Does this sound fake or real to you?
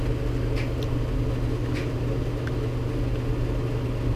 real